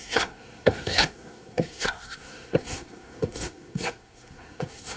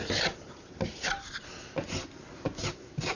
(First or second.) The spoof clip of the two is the first